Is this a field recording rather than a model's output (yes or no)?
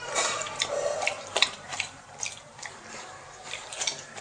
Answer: no